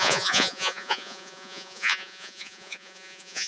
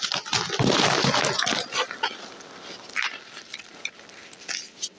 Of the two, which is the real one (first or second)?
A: second